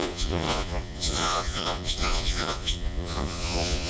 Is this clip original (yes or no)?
no